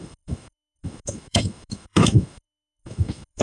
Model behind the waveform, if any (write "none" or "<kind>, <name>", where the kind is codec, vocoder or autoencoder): autoencoder, DAC-VAE